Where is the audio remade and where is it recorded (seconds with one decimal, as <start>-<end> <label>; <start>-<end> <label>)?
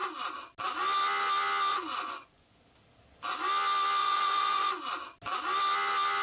0.0-1.7 recorded; 1.7-2.6 remade; 2.6-4.0 recorded; 4.0-5.0 remade; 5.0-6.2 recorded